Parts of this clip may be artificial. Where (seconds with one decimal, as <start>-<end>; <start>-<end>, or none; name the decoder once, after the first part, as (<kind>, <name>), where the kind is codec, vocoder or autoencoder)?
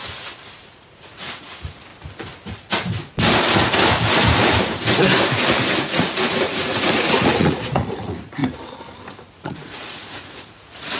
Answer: 0.6-1.9 (vocoder, Vocos); 5.8-8.4; 9.3-11.0